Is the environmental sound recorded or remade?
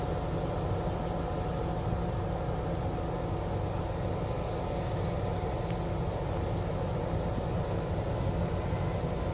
recorded